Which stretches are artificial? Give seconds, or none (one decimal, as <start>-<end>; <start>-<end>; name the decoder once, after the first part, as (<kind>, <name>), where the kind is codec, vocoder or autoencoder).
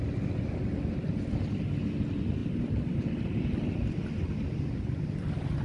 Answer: none